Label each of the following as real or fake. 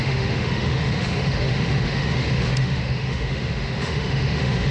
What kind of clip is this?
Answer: fake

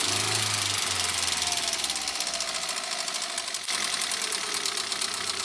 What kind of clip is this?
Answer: real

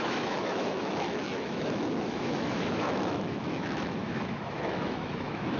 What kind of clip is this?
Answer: fake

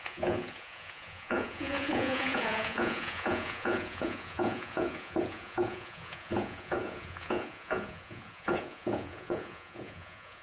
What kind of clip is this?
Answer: fake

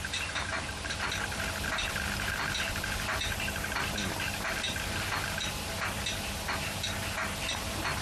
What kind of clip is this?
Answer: real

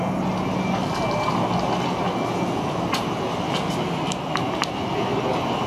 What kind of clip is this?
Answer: real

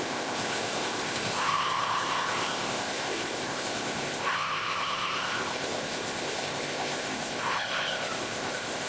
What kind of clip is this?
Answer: fake